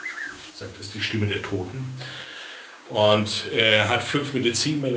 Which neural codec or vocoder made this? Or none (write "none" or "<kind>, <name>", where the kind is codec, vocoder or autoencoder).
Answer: codec, DAC